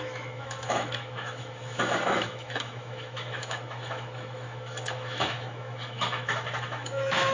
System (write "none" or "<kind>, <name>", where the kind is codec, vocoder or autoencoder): autoencoder, DAC-VAE